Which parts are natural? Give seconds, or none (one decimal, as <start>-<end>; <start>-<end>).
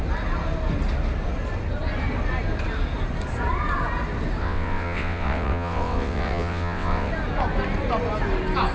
0.0-4.4; 7.1-8.7